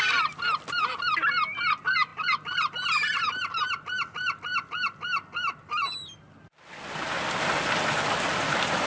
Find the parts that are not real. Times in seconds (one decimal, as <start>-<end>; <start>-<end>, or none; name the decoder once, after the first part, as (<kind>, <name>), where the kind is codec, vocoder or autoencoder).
0.0-8.9 (vocoder, BigVGAN v2)